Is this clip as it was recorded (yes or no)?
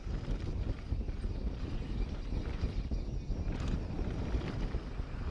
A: yes